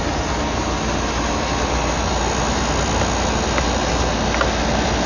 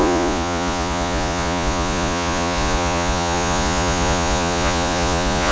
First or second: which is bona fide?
first